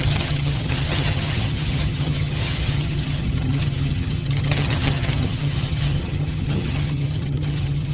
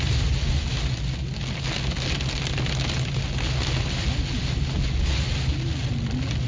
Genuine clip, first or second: second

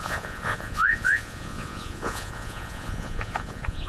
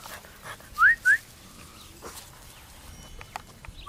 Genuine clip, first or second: second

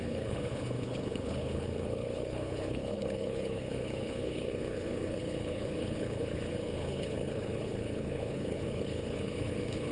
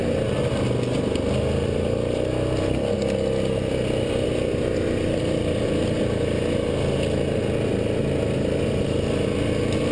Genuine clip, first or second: second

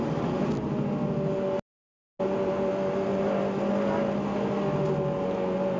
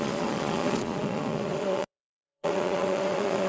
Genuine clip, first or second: first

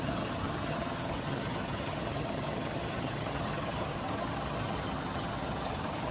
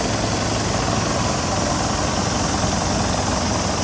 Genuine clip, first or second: second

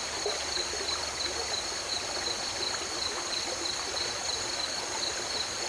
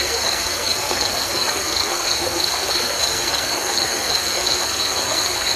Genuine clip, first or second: first